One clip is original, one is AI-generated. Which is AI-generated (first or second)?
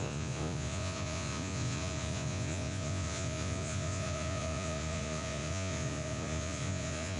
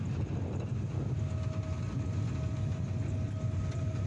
first